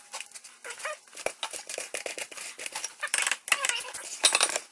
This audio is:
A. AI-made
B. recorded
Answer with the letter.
B